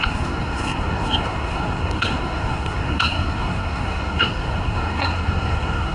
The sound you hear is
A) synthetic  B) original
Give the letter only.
A